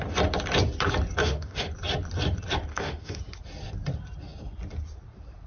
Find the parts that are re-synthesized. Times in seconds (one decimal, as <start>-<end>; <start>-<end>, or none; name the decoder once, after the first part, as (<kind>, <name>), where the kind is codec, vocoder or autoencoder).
1.2-1.7 (autoencoder, DAC-VAE); 2.7-3.2